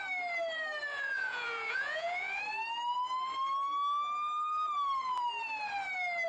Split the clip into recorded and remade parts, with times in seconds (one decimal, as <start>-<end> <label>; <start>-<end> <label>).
0.0-0.9 recorded; 0.9-2.4 remade; 2.4-6.3 recorded